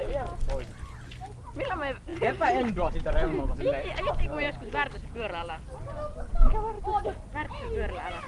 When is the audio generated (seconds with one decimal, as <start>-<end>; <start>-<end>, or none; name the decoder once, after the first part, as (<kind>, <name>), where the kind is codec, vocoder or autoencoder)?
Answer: none